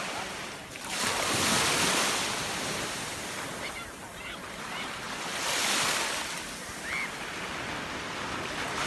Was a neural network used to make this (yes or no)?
no